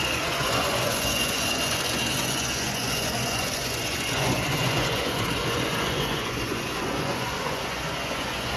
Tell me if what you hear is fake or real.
fake